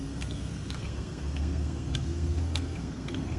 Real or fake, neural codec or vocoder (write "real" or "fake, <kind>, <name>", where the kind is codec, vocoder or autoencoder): fake, codec, SNAC